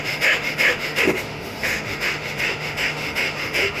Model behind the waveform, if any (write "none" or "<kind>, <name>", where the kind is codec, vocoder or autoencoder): autoencoder, DAC-VAE